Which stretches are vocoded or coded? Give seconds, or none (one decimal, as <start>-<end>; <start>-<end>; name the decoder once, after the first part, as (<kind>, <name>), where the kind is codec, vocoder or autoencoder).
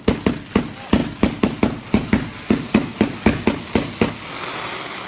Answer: none